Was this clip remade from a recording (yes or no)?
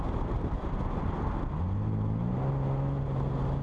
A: no